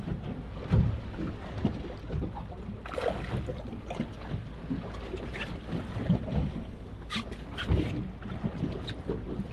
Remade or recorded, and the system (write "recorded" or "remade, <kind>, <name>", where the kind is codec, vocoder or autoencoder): recorded